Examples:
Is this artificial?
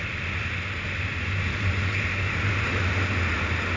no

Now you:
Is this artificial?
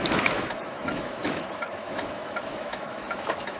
yes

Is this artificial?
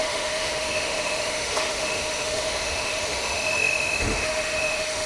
yes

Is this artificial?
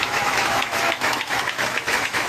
yes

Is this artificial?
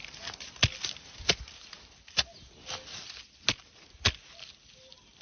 no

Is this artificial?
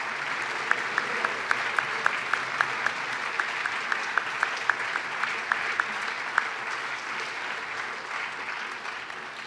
no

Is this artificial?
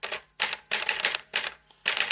no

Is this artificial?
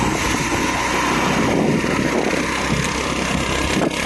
no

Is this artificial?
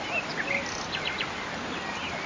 no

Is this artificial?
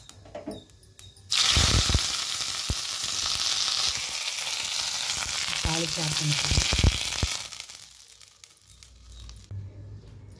no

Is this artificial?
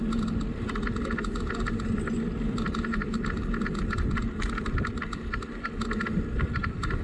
no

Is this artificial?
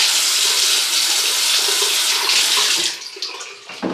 no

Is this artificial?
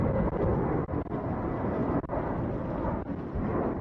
no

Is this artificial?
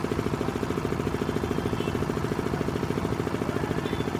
no